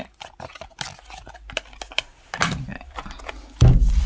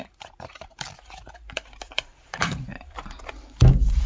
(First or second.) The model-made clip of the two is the second